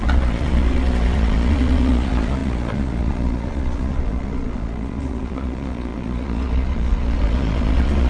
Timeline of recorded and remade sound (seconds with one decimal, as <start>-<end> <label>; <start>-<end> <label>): 0.0-8.1 remade